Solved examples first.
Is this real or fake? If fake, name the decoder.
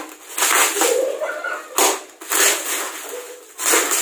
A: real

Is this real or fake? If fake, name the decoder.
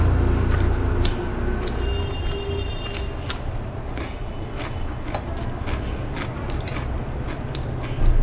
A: real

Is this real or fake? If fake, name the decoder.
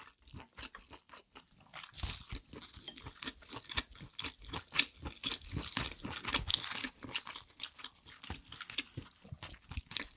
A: real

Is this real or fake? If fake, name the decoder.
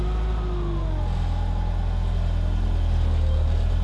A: real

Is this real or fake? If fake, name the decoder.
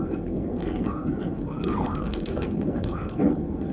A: fake, codec, SNAC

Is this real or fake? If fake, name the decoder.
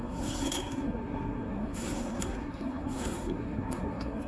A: fake, codec, SNAC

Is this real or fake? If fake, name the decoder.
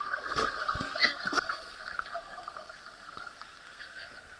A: fake, codec, SNAC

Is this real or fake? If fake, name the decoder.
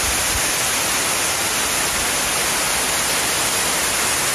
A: real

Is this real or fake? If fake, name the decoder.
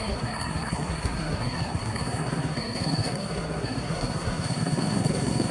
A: fake, codec, SNAC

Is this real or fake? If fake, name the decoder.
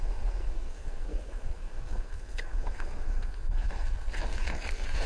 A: fake, codec, SNAC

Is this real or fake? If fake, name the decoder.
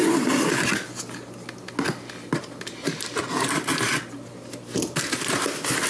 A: real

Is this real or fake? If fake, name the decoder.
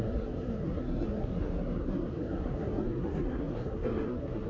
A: fake, codec, SNAC